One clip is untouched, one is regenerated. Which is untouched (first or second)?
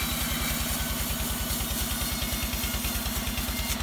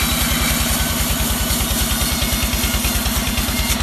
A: first